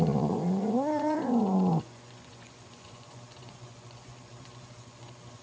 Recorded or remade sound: remade